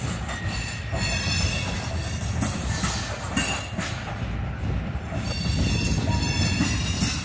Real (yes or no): yes